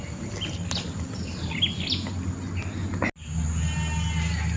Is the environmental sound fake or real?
real